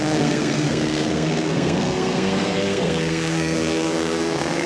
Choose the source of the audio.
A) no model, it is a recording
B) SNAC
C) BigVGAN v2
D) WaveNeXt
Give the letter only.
B